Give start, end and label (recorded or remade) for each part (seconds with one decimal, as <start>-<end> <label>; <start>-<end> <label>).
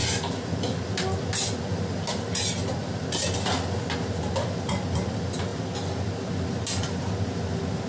0.0-7.9 recorded